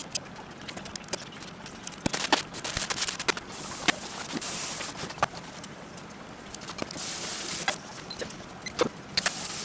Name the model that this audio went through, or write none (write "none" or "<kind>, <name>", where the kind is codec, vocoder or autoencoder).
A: none